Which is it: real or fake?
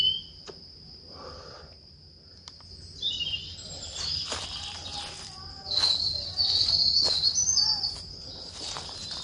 real